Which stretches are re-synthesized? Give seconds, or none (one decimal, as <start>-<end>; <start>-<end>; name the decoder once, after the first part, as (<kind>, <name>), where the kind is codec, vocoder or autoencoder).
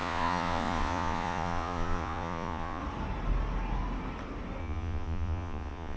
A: 0.0-2.8 (vocoder, Vocos); 4.6-6.0